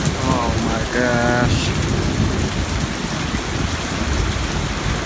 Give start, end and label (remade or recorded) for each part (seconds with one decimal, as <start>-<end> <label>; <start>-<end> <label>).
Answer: 0.0-5.1 recorded